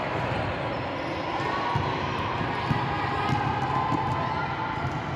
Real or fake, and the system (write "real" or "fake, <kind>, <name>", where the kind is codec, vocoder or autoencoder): real